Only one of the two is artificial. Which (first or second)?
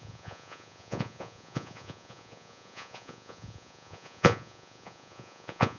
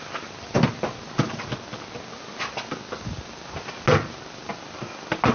first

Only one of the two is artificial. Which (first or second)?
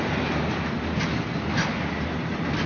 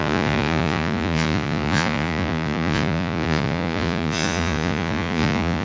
second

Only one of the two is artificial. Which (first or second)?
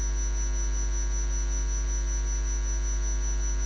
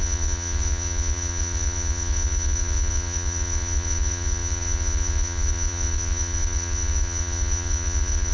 second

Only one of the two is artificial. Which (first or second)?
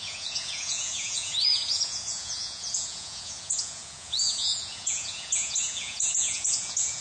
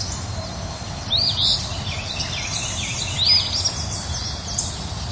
first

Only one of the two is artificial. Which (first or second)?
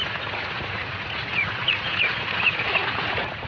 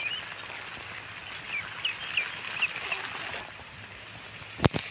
first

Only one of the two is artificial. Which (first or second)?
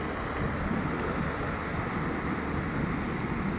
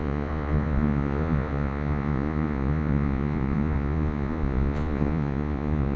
second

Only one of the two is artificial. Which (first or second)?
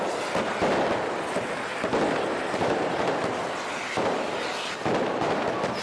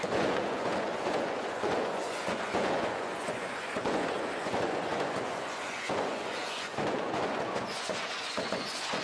second